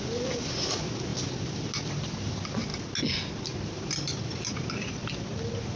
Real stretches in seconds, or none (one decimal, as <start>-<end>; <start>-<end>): 0.0-5.8